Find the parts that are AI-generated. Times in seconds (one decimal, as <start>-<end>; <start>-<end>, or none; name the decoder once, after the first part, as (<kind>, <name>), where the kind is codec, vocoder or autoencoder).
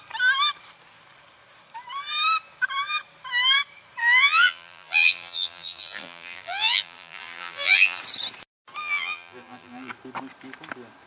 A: 4.0-8.0 (vocoder, BigVGAN v2); 8.8-9.9